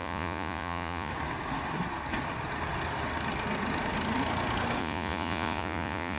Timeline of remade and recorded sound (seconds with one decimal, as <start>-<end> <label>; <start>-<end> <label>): 0.0-1.1 remade; 1.1-4.8 recorded; 4.8-6.2 remade